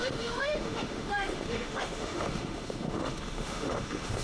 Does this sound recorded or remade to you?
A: remade